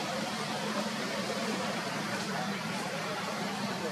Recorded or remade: remade